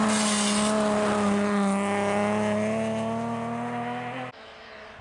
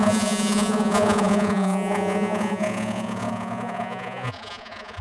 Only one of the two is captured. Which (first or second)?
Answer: first